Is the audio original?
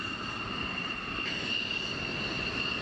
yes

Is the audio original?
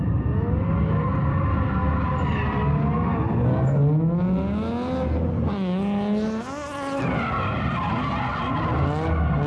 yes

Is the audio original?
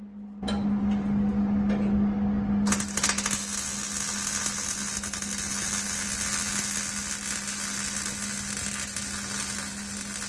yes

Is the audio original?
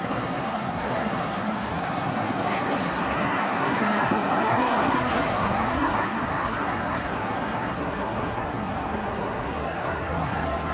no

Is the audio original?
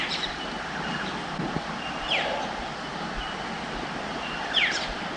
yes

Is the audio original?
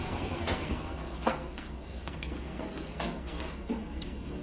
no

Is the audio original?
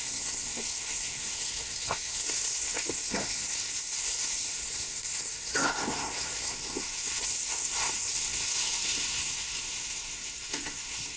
no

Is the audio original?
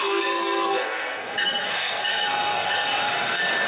no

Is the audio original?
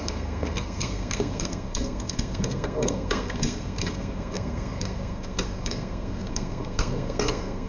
no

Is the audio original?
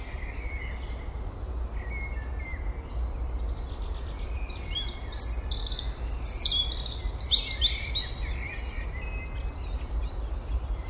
yes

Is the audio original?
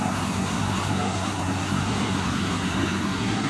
no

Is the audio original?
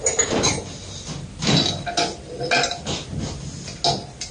yes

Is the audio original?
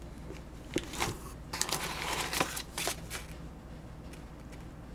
yes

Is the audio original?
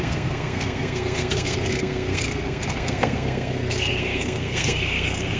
no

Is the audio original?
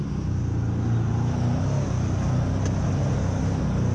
yes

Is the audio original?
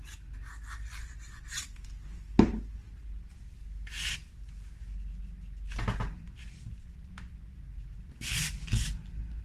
yes